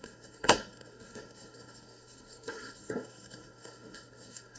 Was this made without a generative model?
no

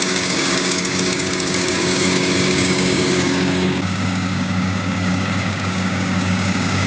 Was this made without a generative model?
no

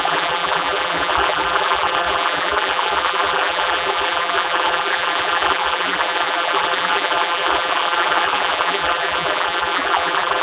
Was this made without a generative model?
no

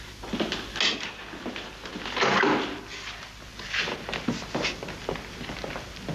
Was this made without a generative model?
yes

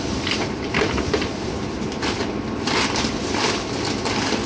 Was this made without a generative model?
no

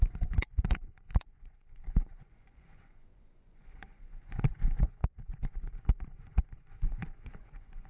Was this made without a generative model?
no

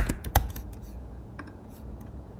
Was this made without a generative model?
no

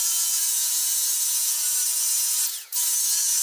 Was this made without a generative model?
no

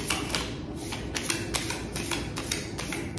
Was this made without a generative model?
yes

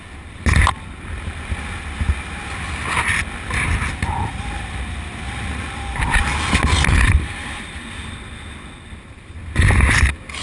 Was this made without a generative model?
yes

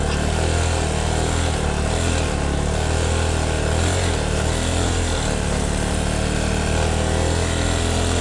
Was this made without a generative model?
yes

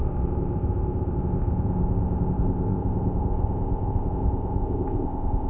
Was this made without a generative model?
no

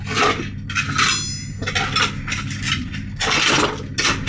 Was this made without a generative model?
yes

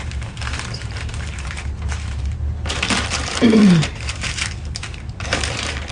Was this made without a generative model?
no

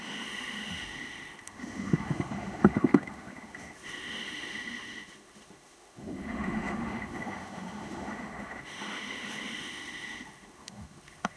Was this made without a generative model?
no